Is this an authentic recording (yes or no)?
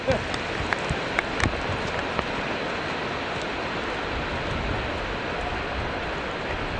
yes